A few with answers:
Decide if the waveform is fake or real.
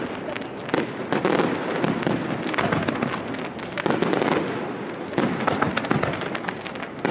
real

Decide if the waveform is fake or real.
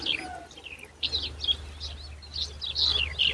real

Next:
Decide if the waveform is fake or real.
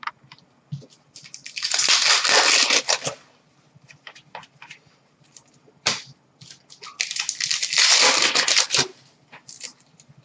real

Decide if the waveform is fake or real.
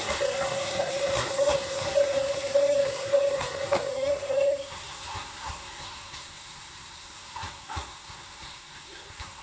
fake